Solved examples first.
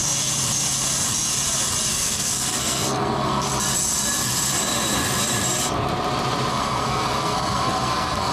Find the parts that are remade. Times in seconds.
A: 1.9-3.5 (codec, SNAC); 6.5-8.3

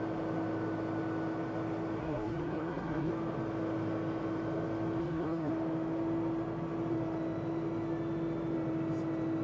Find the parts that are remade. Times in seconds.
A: 2.0-3.1 (codec, SNAC); 5.0-5.5

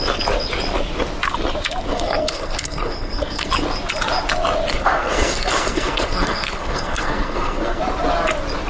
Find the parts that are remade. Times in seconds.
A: 1.9-3.5 (codec, SNAC); 4.7-7.8

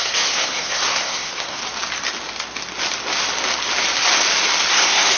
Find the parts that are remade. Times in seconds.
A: 0.0-1.6 (codec, SNAC); 4.7-5.2

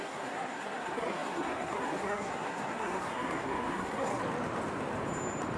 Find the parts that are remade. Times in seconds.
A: 0.0-4.1 (codec, SNAC)